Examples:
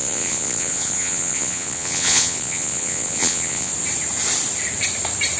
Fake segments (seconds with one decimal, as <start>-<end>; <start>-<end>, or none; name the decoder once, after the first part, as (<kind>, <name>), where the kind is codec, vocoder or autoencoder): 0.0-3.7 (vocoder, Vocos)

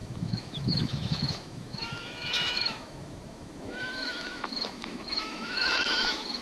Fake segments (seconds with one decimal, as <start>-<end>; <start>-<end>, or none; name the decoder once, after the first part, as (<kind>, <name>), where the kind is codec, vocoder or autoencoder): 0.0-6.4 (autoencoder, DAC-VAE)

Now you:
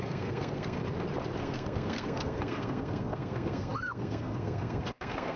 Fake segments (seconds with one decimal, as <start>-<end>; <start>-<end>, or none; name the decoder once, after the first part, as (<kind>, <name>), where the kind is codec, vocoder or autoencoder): 0.0-0.8 (codec, SNAC); 1.4-5.4

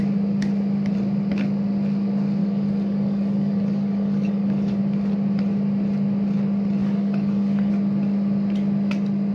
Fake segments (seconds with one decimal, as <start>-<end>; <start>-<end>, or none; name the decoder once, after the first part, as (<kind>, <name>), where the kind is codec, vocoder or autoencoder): 2.4-4.8 (codec, DAC); 6.8-7.7